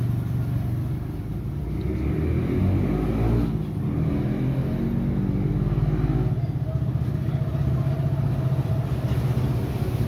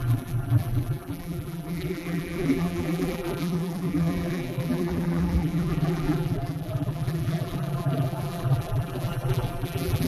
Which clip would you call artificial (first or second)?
second